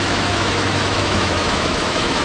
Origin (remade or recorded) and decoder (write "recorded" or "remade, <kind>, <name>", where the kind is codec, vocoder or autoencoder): remade, autoencoder, DAC-VAE